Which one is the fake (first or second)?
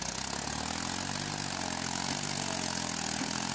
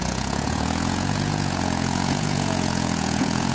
second